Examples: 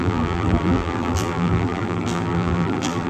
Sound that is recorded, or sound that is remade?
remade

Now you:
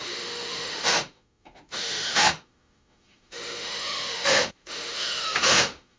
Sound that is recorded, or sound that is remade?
remade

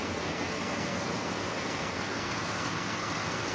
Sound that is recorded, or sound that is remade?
remade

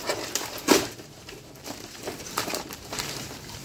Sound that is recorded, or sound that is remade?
remade